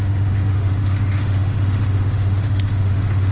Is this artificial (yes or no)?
yes